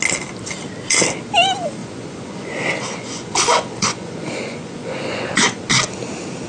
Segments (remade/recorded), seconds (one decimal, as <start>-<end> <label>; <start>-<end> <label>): 0.0-1.8 recorded; 1.8-5.7 remade; 5.7-6.5 recorded